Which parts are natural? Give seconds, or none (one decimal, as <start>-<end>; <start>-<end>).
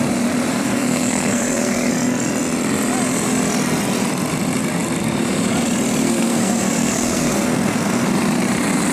0.0-0.5; 1.9-6.0; 8.1-8.9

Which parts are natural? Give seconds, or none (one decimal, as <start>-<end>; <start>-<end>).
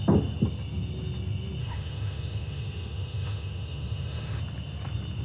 0.0-1.6; 4.4-5.2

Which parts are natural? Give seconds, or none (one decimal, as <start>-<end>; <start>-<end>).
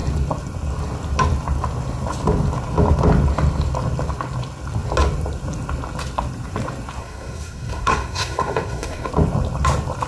0.0-7.0; 9.1-10.1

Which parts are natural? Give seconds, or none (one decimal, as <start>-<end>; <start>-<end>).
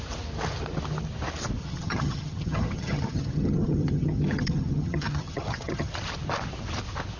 0.0-1.6; 5.9-7.2